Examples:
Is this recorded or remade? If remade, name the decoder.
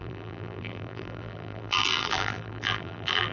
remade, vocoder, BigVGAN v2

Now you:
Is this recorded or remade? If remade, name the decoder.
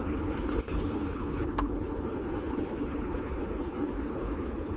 remade, codec, HILCodec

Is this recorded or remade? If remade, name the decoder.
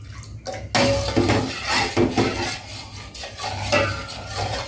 recorded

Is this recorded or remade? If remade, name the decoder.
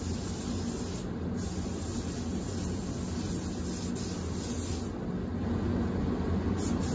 recorded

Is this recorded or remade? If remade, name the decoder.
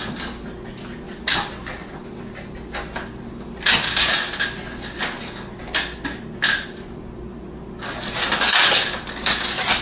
recorded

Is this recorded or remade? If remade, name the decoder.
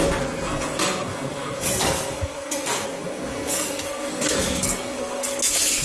remade, codec, SNAC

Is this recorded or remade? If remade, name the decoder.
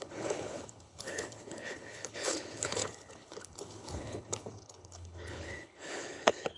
remade, codec, HILCodec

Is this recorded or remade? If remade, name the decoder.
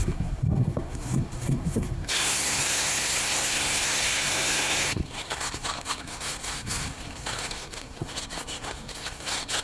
remade, codec, SNAC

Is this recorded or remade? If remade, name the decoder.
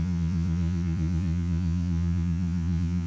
remade, vocoder, Vocos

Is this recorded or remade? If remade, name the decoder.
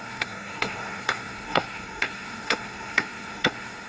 remade, codec, SNAC